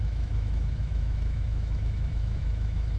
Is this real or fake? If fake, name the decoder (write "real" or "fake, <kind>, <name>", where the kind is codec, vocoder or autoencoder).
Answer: fake, autoencoder, DAC-VAE